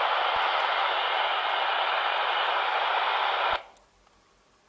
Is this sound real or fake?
real